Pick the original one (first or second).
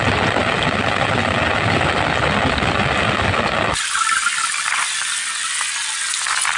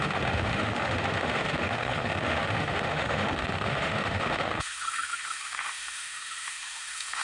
first